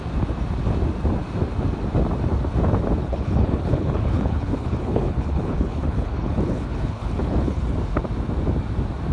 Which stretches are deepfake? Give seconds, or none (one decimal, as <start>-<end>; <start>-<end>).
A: 3.0-7.6